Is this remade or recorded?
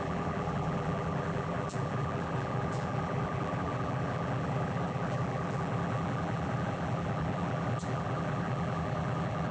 remade